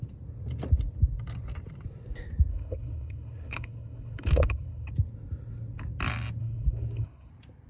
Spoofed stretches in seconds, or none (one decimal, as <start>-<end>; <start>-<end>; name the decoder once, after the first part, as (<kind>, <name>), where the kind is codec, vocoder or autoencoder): 2.5-4.9 (codec, HILCodec); 6.4-7.3